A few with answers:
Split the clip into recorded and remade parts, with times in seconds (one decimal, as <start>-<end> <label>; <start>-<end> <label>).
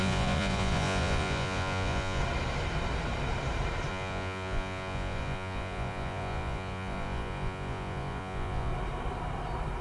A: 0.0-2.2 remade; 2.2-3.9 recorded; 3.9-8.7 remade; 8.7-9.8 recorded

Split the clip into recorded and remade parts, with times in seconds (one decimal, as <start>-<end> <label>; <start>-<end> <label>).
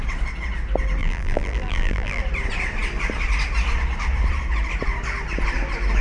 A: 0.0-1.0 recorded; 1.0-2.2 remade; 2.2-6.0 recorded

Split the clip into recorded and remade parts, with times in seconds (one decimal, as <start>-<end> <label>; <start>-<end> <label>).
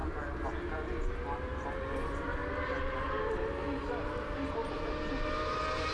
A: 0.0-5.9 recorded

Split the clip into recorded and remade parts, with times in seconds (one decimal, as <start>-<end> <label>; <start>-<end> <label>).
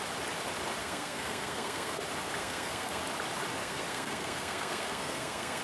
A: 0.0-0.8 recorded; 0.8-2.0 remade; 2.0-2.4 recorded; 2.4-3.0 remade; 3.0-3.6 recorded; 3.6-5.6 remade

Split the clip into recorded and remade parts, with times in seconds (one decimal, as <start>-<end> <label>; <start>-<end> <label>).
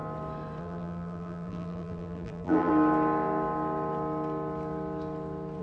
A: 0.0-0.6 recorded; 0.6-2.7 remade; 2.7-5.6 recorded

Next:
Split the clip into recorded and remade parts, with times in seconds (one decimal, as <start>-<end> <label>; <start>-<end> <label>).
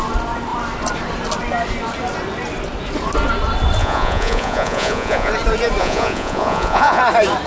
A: 0.0-3.8 recorded; 3.8-5.3 remade; 5.3-5.8 recorded; 5.8-7.0 remade; 7.0-7.5 recorded